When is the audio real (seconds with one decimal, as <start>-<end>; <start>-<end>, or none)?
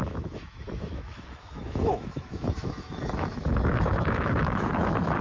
none